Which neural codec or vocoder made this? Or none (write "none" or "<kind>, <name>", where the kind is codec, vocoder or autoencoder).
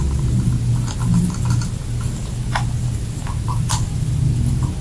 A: none